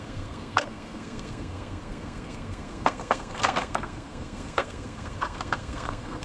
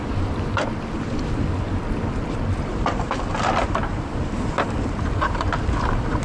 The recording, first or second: second